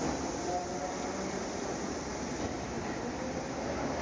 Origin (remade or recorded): recorded